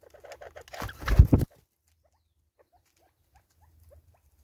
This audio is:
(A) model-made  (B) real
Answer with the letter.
B